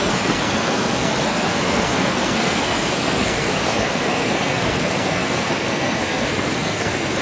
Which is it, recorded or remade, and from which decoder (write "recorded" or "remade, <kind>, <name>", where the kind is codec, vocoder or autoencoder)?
remade, codec, SNAC